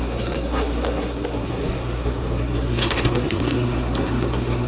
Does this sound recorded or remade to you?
remade